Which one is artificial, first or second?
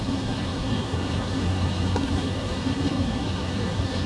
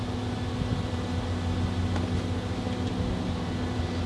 first